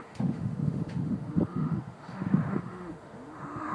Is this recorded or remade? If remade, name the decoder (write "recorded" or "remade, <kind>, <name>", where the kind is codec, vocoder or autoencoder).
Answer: remade, autoencoder, DAC-VAE